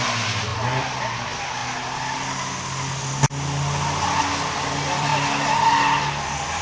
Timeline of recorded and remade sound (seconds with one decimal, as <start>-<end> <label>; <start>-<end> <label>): 0.0-6.6 recorded

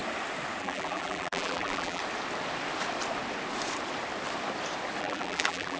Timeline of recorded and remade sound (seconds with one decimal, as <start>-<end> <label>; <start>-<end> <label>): 0.0-0.6 recorded; 0.6-2.0 remade; 2.0-5.0 recorded; 5.0-5.8 remade

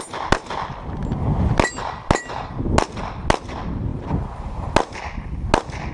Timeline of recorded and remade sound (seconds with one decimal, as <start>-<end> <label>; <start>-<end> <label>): 0.0-3.9 recorded; 3.9-4.7 remade; 4.7-5.9 recorded

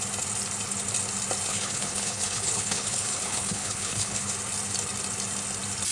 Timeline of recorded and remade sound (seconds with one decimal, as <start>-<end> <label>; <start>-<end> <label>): 0.0-1.5 recorded; 1.5-4.3 remade; 4.3-5.9 recorded